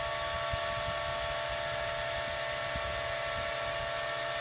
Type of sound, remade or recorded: recorded